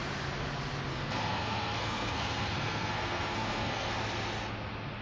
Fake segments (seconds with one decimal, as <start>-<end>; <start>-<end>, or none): 0.9-3.9